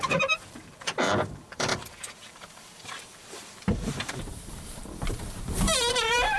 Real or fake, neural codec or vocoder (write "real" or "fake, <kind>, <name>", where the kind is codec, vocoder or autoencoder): fake, vocoder, BigVGAN v2